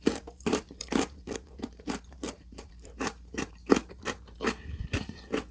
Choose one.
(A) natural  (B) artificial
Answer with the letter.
B